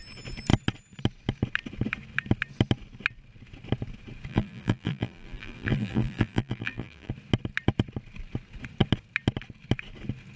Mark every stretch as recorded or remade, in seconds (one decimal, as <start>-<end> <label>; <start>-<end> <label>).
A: 0.0-4.3 recorded; 4.3-7.1 remade; 7.1-10.4 recorded